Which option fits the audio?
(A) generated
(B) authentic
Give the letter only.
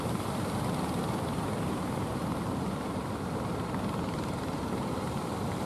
A